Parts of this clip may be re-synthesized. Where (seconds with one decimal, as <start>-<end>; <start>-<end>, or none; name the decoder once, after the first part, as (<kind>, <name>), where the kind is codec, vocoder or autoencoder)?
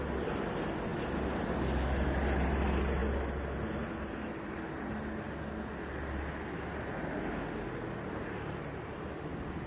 none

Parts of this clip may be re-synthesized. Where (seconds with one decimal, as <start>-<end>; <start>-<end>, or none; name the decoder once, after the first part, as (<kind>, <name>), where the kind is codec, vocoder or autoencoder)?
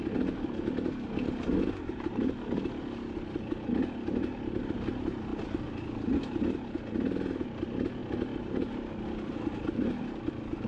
none